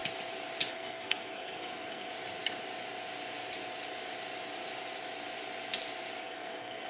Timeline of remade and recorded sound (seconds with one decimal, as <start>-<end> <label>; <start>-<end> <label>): 0.0-0.7 recorded; 0.7-2.1 remade; 2.1-6.2 recorded; 6.2-6.9 remade